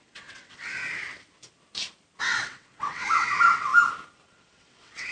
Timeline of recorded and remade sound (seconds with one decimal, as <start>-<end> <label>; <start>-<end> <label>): 0.0-0.7 remade; 0.7-2.2 recorded; 2.2-3.7 remade; 3.7-4.3 recorded; 4.3-5.1 remade